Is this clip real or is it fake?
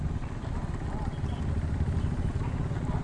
real